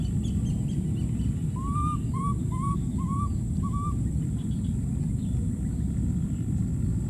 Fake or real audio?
real